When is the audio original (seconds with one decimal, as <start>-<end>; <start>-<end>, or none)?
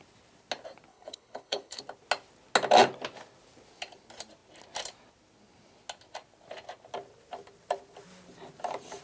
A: 0.0-0.9; 1.8-9.0